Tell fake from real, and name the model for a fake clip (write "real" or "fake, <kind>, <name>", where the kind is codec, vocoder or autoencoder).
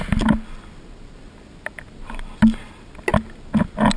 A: real